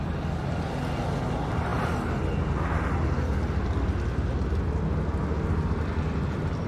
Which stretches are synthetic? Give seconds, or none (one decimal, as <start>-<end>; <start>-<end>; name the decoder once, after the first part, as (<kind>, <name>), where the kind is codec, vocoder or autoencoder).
none